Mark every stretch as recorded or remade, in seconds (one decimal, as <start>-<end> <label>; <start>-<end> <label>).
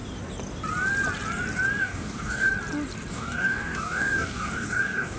0.0-1.8 recorded; 1.8-2.5 remade; 2.5-3.1 recorded; 3.1-5.2 remade